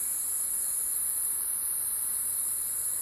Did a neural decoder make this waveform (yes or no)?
yes